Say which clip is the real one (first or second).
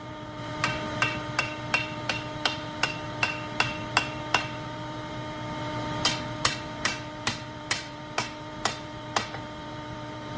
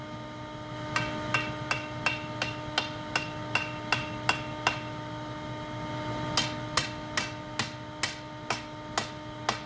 second